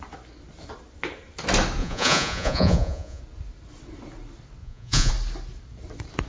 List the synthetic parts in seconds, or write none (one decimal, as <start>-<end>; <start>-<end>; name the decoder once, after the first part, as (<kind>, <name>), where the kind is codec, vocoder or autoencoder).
1.8-3.2 (vocoder, Vocos); 4.6-5.1